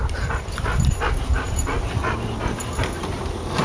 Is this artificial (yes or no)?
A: no